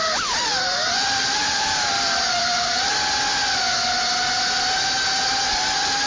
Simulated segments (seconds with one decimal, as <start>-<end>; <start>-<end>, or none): 0.9-2.9